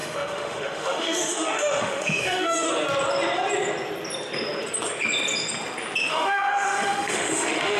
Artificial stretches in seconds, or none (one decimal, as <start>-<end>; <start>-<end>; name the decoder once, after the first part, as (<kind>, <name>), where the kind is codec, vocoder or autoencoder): 0.0-2.7 (autoencoder, DAC-VAE); 6.1-7.8